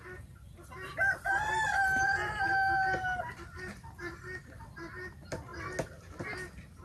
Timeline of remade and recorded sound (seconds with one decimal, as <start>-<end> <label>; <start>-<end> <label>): 0.0-6.8 recorded